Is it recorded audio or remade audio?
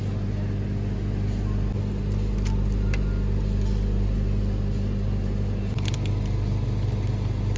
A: recorded